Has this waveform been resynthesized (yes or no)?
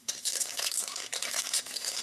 yes